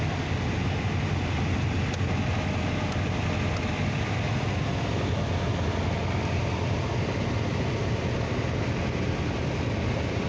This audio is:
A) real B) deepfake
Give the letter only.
A